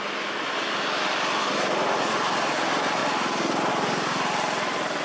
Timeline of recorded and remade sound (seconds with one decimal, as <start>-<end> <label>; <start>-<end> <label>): 0.0-5.0 recorded